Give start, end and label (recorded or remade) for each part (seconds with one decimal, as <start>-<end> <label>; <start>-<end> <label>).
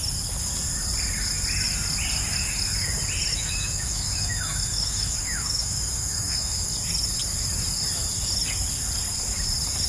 0.0-3.3 recorded; 3.3-6.7 remade; 6.7-9.9 recorded